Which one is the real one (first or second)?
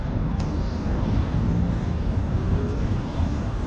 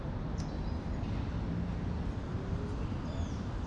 second